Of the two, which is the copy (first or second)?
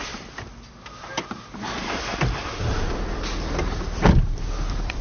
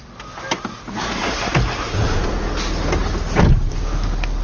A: first